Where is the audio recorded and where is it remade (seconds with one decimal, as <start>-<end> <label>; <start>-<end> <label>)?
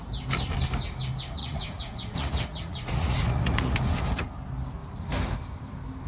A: 0.0-1.4 recorded; 1.4-3.8 remade; 3.8-6.1 recorded